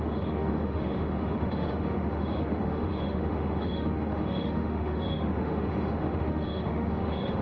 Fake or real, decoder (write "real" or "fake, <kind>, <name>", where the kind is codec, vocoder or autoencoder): fake, autoencoder, DAC-VAE